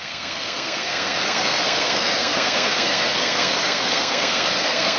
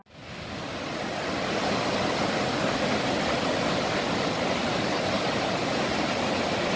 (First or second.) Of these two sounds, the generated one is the first